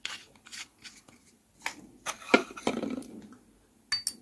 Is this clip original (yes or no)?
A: yes